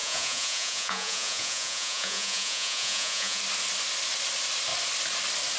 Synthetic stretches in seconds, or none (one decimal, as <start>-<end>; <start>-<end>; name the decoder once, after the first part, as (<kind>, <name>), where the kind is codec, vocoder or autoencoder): 0.0-3.4 (vocoder, Vocos)